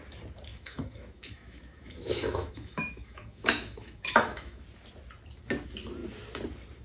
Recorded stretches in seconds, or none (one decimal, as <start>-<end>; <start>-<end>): 0.0-0.5; 4.6-6.8